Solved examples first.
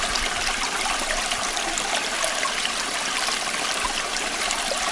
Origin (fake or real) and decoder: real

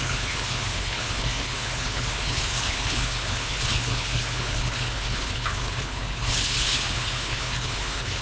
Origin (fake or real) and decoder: fake, codec, HILCodec